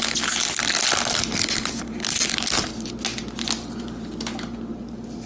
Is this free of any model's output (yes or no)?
yes